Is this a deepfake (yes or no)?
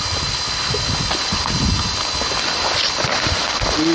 no